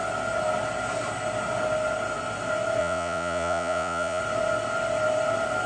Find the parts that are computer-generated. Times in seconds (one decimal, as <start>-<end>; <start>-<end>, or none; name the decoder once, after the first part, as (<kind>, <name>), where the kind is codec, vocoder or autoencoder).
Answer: 2.8-4.2 (vocoder, Vocos)